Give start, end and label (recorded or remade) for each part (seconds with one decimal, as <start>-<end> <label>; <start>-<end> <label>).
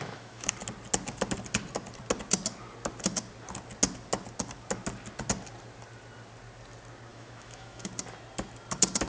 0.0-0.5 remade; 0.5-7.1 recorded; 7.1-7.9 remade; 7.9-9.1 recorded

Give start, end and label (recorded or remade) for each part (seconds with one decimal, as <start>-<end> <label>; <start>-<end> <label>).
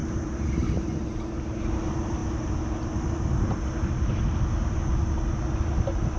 0.0-0.7 remade; 0.7-6.2 recorded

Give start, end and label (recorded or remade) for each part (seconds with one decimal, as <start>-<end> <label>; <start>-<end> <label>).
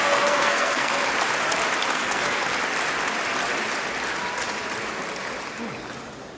0.0-1.0 remade; 1.0-1.9 recorded; 1.9-2.5 remade; 2.5-6.4 recorded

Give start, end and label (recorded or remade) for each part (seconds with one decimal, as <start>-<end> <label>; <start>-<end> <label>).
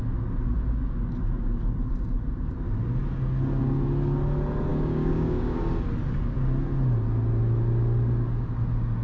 0.0-4.7 recorded; 4.7-5.6 remade; 5.6-9.0 recorded